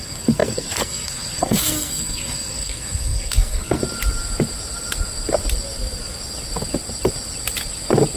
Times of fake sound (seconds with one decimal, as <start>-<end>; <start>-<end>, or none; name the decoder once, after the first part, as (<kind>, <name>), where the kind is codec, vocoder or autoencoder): 0.0-3.8 (codec, SNAC)